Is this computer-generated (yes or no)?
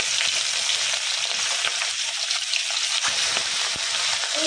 no